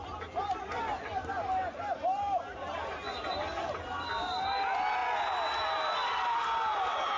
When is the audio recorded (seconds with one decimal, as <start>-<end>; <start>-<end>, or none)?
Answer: 0.0-1.2; 4.1-7.2